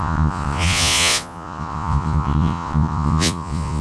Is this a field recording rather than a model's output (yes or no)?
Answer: no